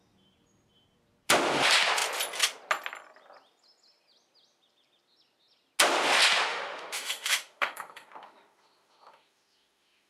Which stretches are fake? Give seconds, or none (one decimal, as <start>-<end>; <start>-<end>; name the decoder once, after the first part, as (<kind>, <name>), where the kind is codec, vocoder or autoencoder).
6.5-10.1 (autoencoder, DAC-VAE)